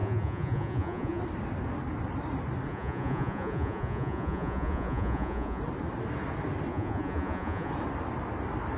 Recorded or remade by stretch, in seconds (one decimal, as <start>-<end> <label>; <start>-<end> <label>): 0.0-1.2 remade; 1.2-2.7 recorded; 2.7-5.6 remade; 5.6-6.7 recorded; 6.7-7.7 remade; 7.7-8.8 recorded